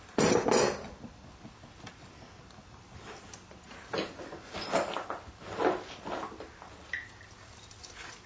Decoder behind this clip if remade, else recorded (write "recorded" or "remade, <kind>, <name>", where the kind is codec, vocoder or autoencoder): recorded